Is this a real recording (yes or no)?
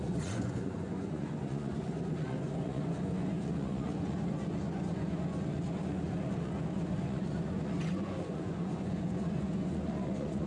no